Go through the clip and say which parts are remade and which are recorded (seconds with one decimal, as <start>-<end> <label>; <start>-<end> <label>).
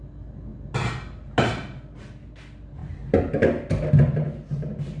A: 0.0-5.0 recorded